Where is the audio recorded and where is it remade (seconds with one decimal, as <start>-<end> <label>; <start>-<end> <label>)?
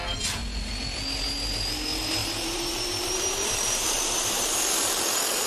0.0-2.2 recorded; 2.2-5.5 remade